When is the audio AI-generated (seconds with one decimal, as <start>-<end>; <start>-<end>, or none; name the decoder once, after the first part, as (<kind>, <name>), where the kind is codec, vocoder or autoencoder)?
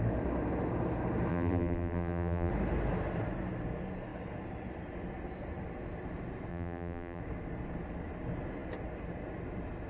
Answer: 1.3-2.5 (vocoder, BigVGAN v2); 6.5-7.2